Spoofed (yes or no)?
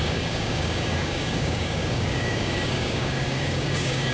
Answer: yes